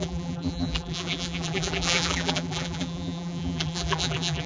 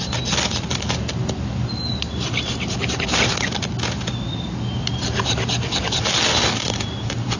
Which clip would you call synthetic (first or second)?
first